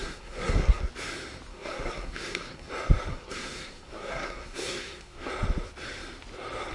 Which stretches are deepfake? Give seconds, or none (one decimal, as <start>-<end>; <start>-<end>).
0.0-0.8; 1.5-2.7; 3.1-5.3